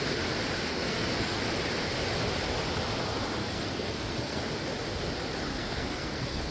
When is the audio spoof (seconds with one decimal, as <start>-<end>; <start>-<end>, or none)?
0.7-1.4; 3.4-4.4; 5.5-6.5